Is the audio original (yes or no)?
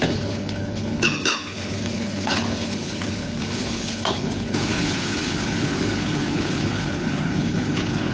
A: no